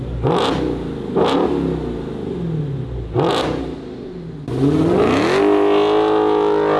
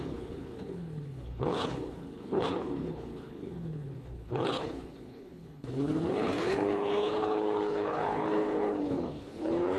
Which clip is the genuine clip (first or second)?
first